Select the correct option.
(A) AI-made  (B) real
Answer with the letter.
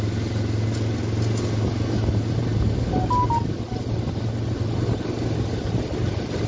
B